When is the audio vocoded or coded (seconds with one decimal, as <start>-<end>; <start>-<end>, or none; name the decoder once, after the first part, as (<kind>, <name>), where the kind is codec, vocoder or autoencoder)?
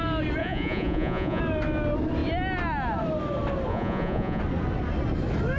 0.4-1.4 (vocoder, Vocos); 3.7-4.4